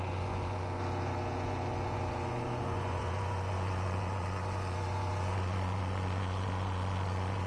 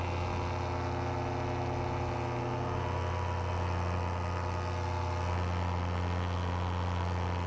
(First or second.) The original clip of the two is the second